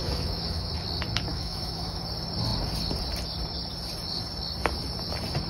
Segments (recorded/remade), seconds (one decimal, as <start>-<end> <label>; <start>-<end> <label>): 0.0-0.7 remade; 0.7-1.3 recorded; 1.3-2.0 remade; 2.0-5.5 recorded